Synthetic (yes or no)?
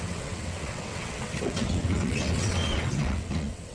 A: yes